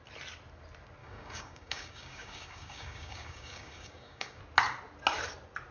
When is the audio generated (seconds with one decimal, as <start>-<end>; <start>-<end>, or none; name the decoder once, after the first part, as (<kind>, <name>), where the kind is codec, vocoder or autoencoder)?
1.0-4.4 (codec, DAC)